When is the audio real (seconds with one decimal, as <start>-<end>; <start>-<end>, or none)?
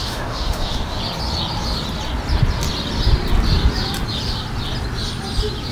1.0-5.7